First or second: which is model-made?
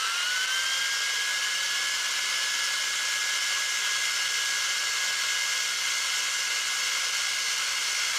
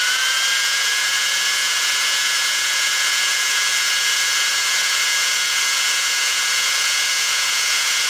second